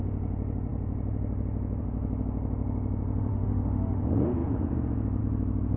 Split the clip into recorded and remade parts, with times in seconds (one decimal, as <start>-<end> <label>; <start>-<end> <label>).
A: 0.0-3.3 recorded; 3.3-4.0 remade; 4.0-5.8 recorded